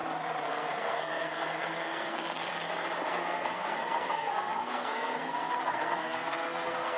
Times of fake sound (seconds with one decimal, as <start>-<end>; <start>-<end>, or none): 0.5-2.5; 3.1-7.0

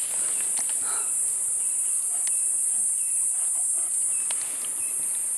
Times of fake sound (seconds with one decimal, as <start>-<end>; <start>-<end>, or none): none

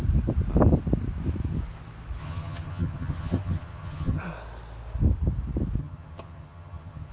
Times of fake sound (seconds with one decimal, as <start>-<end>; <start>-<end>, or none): 2.2-4.2; 5.8-7.1

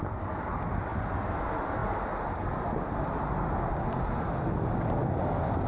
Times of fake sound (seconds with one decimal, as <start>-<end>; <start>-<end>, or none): none

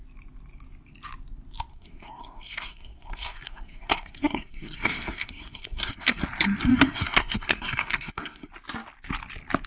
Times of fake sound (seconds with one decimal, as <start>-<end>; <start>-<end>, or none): 1.7-6.2; 6.7-8.5

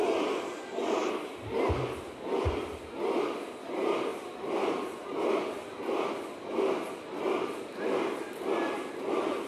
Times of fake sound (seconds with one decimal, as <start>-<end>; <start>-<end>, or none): 1.0-1.5; 4.1-5.1

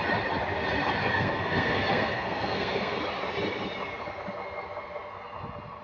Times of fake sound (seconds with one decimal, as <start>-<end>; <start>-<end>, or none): 1.0-3.0

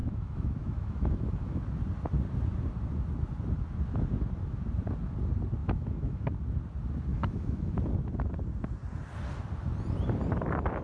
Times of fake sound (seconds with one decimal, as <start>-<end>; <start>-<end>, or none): 0.0-1.6; 5.6-6.3; 7.1-7.7